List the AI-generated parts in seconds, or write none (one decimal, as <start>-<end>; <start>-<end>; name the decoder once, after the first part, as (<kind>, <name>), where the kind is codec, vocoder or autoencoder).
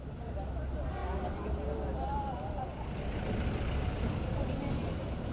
none